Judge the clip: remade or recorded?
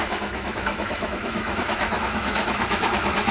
remade